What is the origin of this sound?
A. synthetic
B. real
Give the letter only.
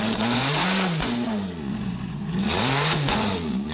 A